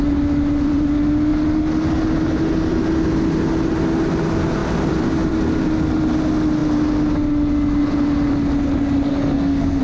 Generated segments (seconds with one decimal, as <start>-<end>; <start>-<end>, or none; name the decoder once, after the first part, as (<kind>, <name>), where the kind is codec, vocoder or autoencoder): 9.1-9.8 (codec, SNAC)